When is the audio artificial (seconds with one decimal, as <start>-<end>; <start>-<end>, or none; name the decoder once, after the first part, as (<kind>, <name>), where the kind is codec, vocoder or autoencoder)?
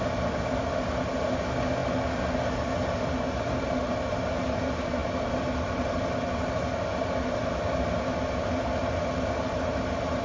none